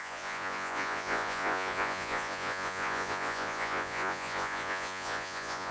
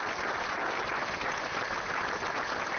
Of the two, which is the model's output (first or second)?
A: first